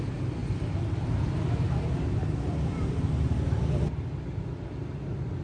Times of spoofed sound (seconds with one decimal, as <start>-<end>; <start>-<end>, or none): 0.4-3.6

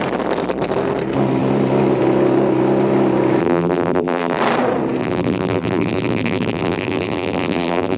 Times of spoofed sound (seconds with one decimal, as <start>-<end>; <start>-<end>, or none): 3.4-4.4; 5.0-8.0